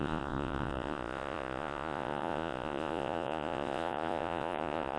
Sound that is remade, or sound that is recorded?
remade